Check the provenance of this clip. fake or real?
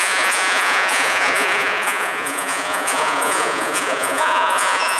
fake